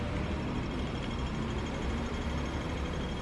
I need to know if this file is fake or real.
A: fake